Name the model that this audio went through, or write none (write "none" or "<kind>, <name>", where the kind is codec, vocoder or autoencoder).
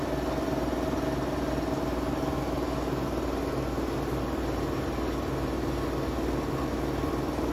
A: none